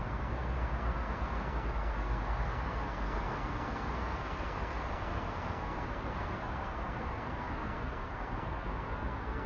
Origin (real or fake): fake